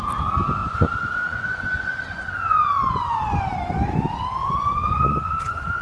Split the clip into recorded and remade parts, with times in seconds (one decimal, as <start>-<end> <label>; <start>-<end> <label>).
0.0-0.6 recorded; 0.6-3.4 remade; 3.4-4.4 recorded; 4.4-5.8 remade